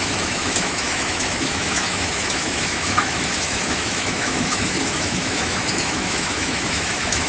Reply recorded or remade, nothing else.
remade